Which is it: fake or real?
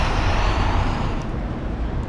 fake